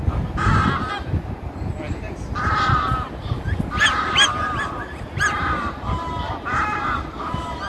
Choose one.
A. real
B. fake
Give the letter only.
A